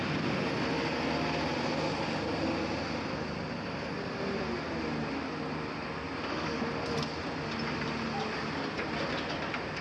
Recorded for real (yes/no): yes